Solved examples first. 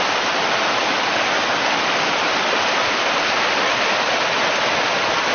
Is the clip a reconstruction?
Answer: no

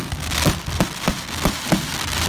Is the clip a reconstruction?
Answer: no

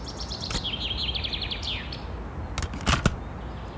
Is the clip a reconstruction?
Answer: no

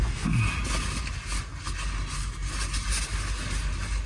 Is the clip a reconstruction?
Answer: no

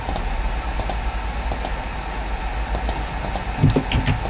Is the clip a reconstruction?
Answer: no